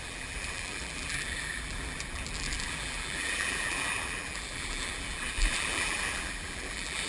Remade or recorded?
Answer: remade